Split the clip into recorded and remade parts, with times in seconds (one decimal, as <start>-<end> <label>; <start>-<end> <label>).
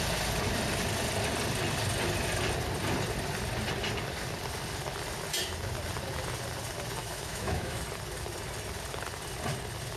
0.0-7.0 recorded; 7.0-7.8 remade; 7.8-10.0 recorded